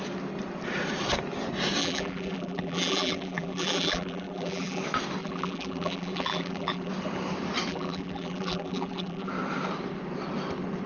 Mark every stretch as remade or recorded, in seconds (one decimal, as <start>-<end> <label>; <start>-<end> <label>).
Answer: 0.0-1.8 recorded; 1.8-4.8 remade; 4.8-5.2 recorded; 5.2-6.9 remade; 6.9-7.7 recorded; 7.7-9.3 remade; 9.3-10.9 recorded